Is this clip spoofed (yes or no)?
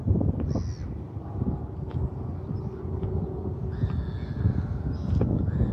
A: no